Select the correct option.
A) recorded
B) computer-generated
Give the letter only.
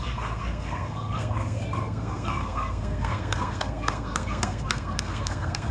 B